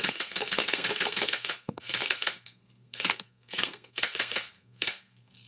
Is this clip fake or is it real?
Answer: fake